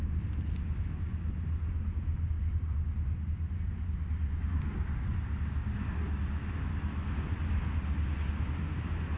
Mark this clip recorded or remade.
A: recorded